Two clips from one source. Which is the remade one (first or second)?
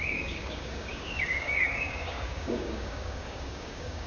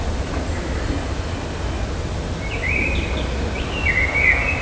first